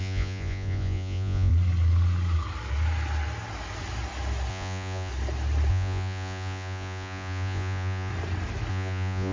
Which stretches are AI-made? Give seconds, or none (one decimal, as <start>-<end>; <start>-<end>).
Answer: 0.0-1.5; 4.5-5.1; 5.7-8.1; 8.7-9.3